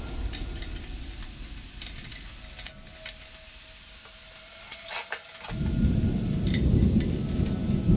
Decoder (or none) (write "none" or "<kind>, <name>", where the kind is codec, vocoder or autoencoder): none